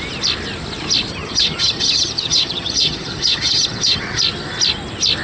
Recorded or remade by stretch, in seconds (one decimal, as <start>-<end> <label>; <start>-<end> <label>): 0.0-1.1 recorded; 1.1-4.2 remade; 4.2-5.2 recorded